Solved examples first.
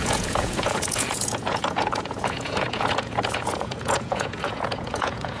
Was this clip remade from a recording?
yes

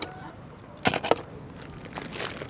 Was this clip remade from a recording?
no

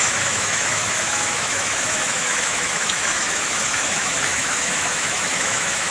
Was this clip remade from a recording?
yes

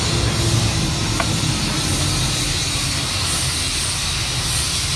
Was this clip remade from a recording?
no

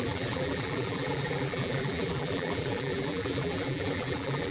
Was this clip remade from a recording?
yes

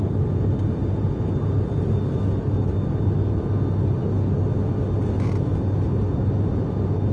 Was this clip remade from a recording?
no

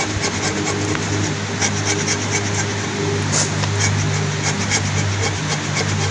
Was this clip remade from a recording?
no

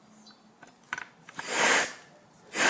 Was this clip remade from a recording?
no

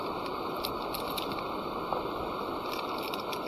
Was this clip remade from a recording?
no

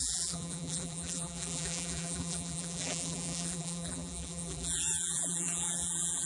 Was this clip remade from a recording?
yes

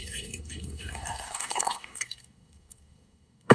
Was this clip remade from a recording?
yes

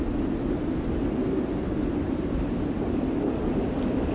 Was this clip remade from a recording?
no